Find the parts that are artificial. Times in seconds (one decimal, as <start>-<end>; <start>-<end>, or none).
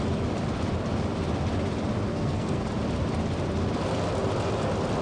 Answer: 2.1-2.7